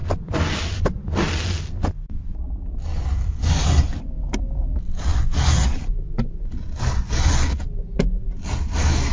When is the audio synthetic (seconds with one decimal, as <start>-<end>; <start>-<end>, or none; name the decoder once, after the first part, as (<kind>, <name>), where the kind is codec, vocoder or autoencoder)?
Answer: none